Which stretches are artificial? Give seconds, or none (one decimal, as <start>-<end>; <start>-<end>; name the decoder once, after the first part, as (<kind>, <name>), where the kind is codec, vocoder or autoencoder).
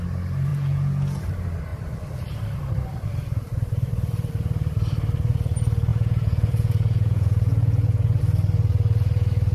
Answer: 0.5-1.2 (vocoder, Vocos); 5.9-8.2